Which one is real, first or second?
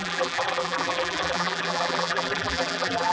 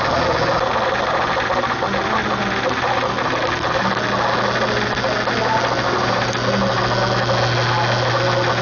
second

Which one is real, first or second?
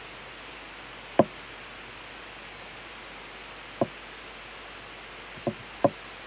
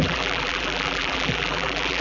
first